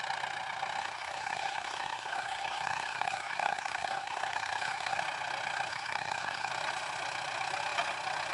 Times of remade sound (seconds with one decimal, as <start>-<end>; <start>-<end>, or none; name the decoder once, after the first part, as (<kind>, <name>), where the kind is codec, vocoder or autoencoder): 0.8-5.0 (codec, SNAC); 5.7-6.5